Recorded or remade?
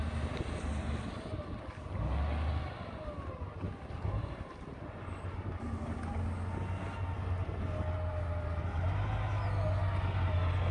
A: recorded